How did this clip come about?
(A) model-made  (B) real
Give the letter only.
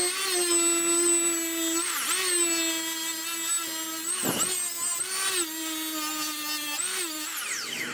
B